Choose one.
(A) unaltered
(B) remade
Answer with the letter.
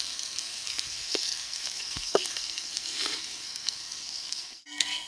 B